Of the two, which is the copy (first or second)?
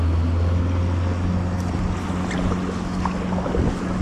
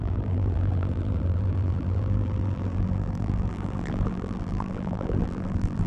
second